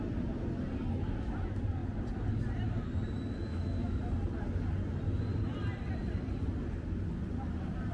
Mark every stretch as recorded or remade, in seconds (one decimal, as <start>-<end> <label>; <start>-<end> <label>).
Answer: 0.0-3.5 recorded; 3.5-4.0 remade; 4.0-7.9 recorded